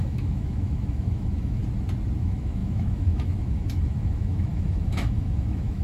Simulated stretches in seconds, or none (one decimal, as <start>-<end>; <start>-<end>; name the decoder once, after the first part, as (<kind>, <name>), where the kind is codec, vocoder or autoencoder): 0.0-1.6 (autoencoder, DAC-VAE); 2.2-5.8